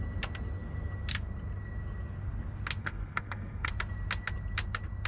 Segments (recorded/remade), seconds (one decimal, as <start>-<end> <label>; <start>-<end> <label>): 0.0-2.8 recorded; 2.8-3.7 remade; 3.7-5.1 recorded